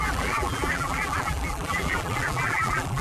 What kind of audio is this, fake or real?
fake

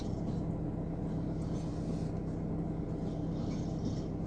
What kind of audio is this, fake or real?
real